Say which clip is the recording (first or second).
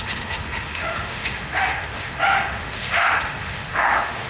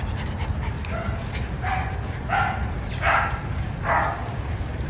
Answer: second